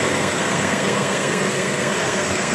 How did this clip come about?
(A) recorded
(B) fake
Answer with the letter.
B